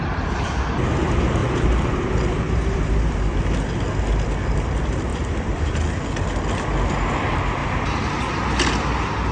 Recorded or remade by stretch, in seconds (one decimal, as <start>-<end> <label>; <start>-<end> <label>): 0.0-1.4 recorded; 1.4-3.4 remade; 3.4-5.1 recorded; 5.1-5.7 remade; 5.7-7.6 recorded; 7.6-8.2 remade; 8.2-9.3 recorded